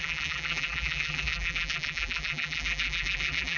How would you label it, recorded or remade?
remade